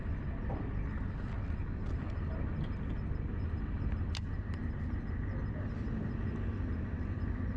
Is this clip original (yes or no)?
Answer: yes